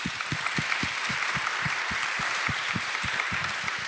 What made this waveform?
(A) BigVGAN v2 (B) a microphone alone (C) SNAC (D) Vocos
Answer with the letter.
A